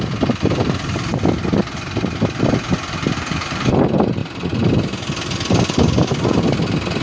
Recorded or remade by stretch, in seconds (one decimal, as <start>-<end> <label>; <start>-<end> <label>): 0.0-7.0 recorded